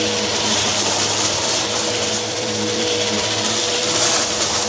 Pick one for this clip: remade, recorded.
remade